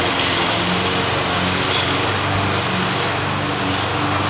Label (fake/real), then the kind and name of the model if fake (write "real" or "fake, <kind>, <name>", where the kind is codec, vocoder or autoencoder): real